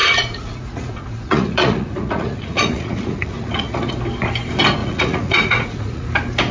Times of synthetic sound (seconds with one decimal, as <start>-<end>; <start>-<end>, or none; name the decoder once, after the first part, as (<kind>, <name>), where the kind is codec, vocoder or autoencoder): 0.0-3.9 (vocoder, Vocos); 4.8-6.1